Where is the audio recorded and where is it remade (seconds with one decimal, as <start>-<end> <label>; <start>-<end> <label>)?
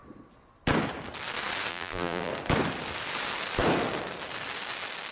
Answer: 0.0-1.7 recorded; 1.7-2.3 remade; 2.3-5.1 recorded